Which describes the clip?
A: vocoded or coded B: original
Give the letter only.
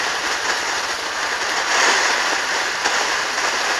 A